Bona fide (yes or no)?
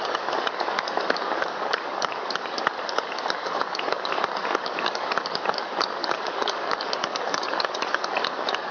no